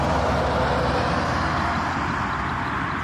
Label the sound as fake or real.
real